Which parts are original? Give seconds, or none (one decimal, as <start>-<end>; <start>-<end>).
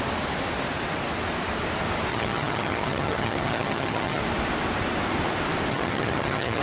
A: 0.0-2.1; 4.2-5.7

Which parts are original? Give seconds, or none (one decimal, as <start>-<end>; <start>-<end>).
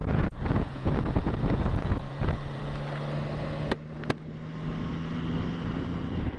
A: 2.6-6.4